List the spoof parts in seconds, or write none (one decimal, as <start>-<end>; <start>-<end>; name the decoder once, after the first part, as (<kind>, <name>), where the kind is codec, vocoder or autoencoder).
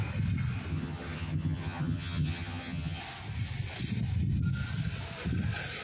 0.7-3.0 (vocoder, HiFi-GAN)